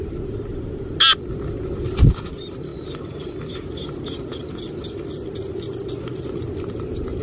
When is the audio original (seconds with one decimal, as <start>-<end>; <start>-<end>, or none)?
0.0-7.2